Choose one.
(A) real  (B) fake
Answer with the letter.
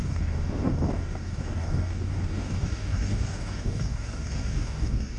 B